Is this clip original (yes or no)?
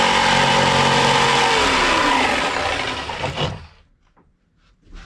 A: yes